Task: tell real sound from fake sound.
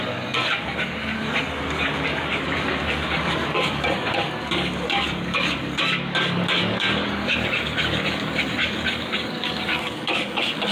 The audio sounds fake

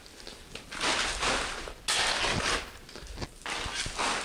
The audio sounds real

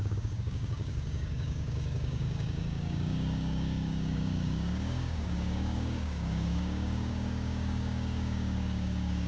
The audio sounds fake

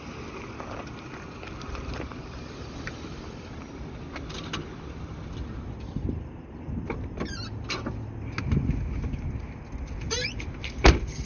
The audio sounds real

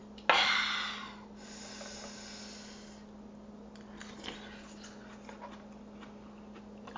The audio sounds real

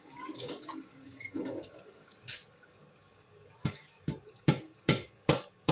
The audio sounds fake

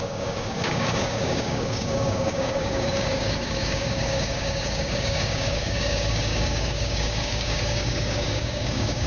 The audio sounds fake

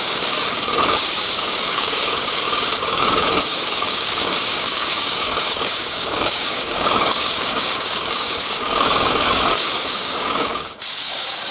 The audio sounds fake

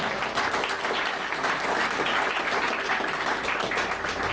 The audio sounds real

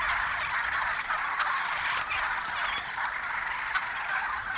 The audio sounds real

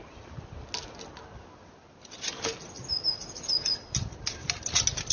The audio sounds real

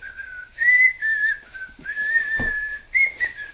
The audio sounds fake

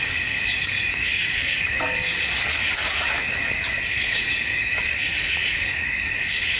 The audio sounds fake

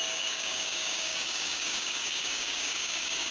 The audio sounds fake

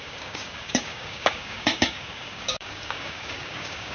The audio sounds fake